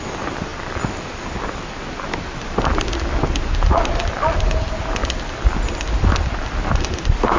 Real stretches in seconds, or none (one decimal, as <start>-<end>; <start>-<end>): 0.0-7.4